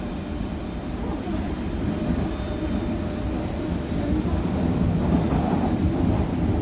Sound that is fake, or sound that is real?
fake